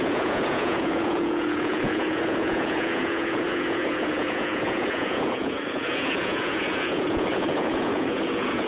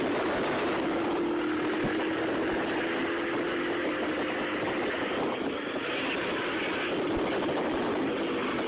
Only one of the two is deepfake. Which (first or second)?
first